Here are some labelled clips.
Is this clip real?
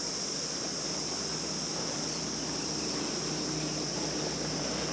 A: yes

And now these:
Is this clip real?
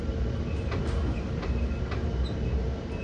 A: yes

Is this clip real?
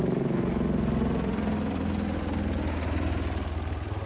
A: yes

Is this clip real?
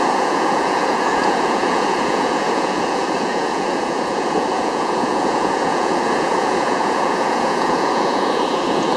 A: no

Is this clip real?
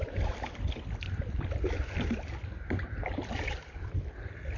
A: yes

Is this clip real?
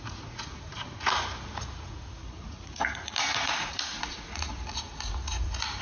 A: no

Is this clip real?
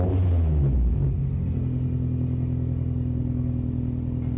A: yes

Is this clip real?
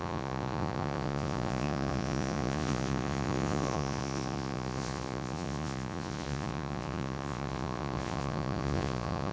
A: no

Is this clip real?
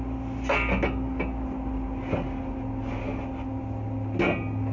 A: yes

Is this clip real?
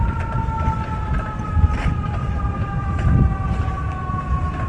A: yes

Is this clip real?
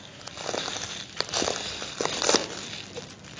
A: yes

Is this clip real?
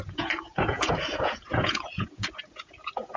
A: no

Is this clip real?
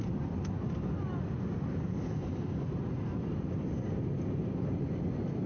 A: yes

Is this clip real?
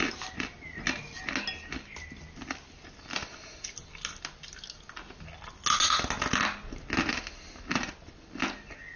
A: yes